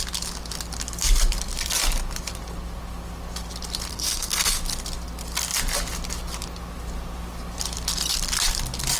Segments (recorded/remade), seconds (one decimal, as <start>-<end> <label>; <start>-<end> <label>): 0.0-3.9 recorded; 3.9-4.6 remade; 4.6-9.0 recorded